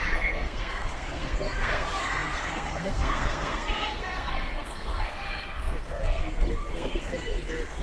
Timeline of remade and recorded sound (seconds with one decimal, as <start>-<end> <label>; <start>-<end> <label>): 0.0-7.8 remade